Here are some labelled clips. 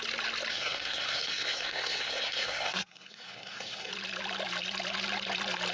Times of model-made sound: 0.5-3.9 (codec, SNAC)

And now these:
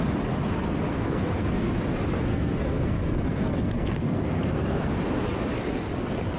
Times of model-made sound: 0.9-1.8 (codec, SNAC); 2.3-5.0

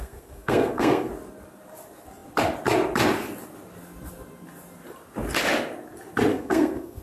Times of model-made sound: 0.0-1.1 (codec, SNAC); 6.3-7.0

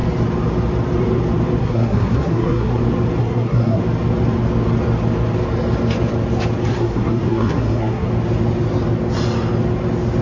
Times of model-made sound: 1.6-2.8 (codec, SNAC); 3.2-3.8; 6.7-8.1

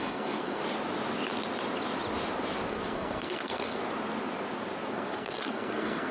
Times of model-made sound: 0.0-0.6 (codec, SNAC); 2.7-3.8; 4.9-6.1

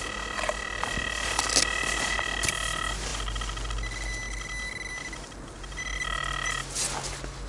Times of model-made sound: none

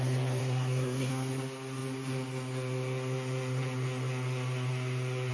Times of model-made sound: 0.4-1.1 (codec, SNAC)